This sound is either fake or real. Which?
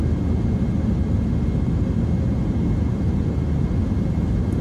real